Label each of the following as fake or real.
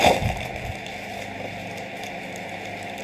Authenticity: real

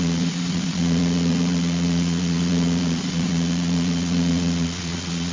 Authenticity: fake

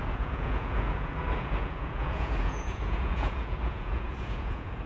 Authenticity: fake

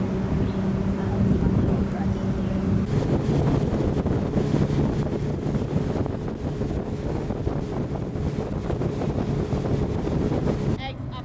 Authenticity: real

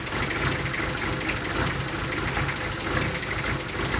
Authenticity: real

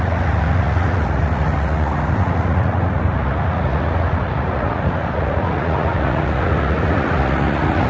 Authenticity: fake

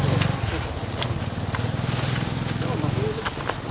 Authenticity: real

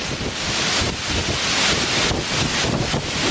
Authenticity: real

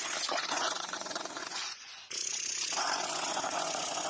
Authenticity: fake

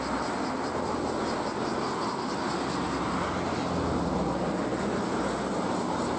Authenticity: real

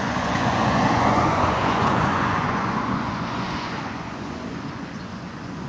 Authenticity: fake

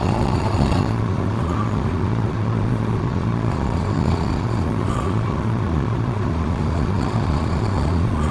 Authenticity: fake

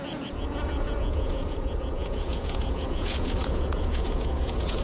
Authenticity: fake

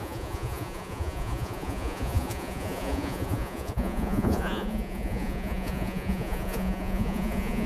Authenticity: fake